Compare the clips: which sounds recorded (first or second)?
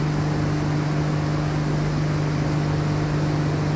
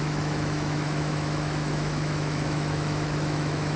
first